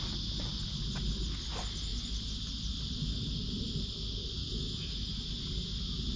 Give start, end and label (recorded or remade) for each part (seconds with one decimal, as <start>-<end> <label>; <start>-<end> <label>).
0.0-4.4 recorded; 4.4-5.1 remade; 5.1-6.2 recorded